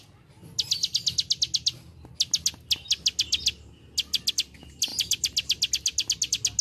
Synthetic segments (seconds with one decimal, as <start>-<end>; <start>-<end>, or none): none